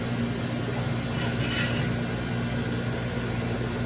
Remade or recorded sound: recorded